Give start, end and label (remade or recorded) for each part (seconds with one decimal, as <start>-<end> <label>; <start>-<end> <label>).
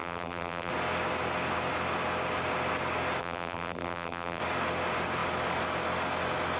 0.0-0.7 remade; 0.7-3.2 recorded; 3.2-4.4 remade; 4.4-6.6 recorded